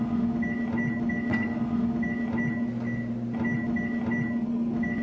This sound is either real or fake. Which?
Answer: real